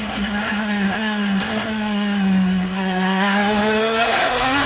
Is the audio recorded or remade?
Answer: remade